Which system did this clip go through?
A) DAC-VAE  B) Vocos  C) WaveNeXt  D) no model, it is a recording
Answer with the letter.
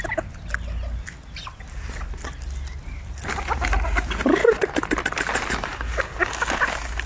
D